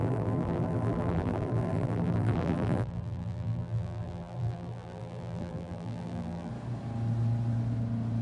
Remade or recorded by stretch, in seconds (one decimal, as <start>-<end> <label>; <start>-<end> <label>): 0.0-6.5 remade; 6.5-8.2 recorded